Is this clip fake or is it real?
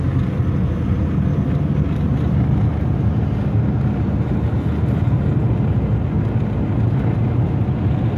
real